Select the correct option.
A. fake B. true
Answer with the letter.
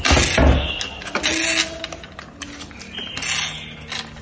B